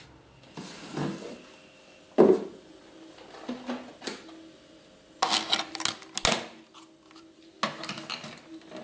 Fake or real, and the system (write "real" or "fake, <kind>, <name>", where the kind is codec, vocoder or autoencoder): real